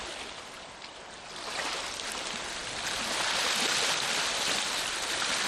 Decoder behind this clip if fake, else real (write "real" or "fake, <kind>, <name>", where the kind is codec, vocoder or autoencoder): real